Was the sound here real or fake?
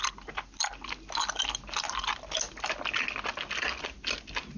real